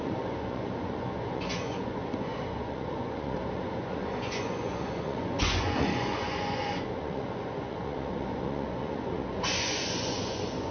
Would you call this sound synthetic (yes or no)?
yes